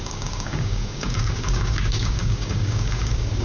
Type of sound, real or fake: fake